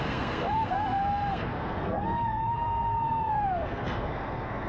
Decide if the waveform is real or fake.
fake